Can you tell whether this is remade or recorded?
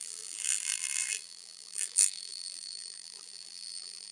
remade